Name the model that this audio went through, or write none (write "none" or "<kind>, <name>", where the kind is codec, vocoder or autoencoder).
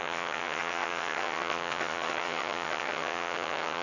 vocoder, HiFi-GAN